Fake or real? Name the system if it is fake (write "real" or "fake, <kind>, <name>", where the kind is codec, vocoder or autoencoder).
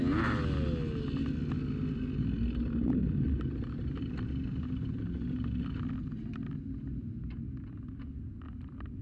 real